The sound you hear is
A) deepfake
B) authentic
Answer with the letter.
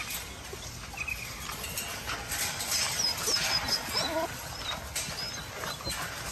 B